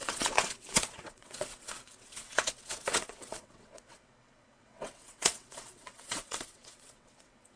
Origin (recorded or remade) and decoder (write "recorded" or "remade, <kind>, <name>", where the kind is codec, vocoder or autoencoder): remade, vocoder, WaveNeXt